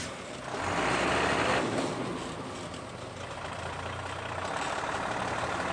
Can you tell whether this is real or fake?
real